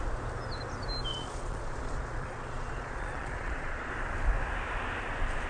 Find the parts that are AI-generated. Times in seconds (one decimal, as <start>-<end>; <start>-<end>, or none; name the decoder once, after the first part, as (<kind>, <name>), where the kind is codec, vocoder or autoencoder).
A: 1.1-3.9 (vocoder, Vocos)